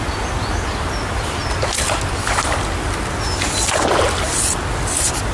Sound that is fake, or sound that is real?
real